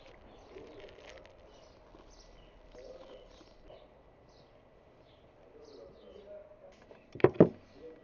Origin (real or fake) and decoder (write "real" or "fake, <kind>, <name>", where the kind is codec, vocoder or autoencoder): real